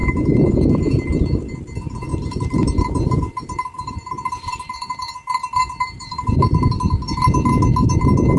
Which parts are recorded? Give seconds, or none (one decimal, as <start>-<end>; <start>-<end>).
0.5-2.1; 6.6-8.4